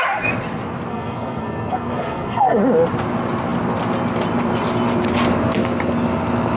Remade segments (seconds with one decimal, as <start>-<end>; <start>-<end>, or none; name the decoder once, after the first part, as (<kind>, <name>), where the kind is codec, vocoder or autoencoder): 0.9-2.6 (codec, SNAC)